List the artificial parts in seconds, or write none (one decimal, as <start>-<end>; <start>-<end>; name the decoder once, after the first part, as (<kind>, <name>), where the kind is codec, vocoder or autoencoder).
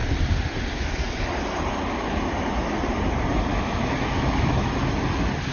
3.5-4.7 (autoencoder, DAC-VAE)